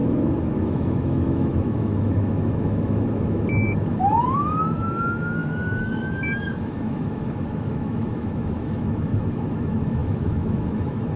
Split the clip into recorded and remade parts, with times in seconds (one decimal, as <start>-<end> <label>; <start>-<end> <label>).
0.0-11.2 remade